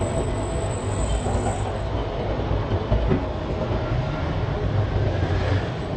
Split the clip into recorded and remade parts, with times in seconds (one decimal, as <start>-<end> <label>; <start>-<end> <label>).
0.0-6.0 recorded